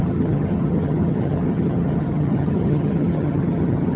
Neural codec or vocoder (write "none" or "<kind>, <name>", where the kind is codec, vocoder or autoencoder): vocoder, HiFi-GAN